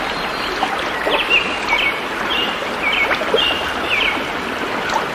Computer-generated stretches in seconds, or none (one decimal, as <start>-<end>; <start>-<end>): 1.0-4.1